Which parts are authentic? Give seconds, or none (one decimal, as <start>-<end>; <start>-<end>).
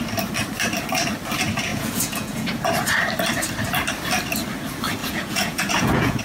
0.0-1.7; 2.6-5.0